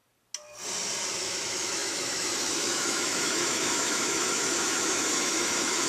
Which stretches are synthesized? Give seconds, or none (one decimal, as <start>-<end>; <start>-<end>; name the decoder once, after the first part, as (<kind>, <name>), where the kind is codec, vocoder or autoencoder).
1.2-5.9 (autoencoder, DAC-VAE)